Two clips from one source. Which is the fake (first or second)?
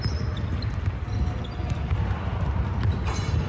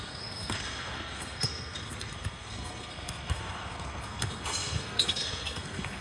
second